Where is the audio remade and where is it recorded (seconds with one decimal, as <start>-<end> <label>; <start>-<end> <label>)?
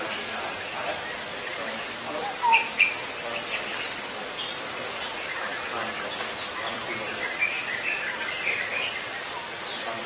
0.0-10.1 recorded